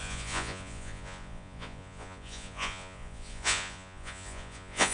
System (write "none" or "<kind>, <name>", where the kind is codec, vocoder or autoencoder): vocoder, Vocos